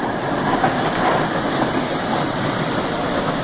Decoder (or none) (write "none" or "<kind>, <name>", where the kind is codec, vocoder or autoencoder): vocoder, BigVGAN v2